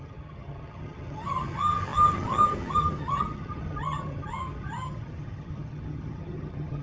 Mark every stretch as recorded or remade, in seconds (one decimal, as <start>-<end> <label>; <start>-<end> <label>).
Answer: 0.0-6.8 remade